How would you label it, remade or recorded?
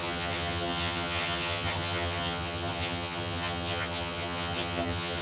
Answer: remade